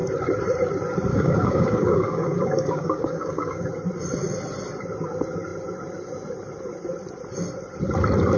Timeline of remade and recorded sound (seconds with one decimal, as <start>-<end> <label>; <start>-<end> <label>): 0.0-1.1 recorded; 1.1-3.7 remade; 3.7-8.4 recorded